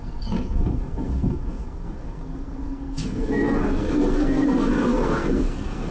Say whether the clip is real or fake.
fake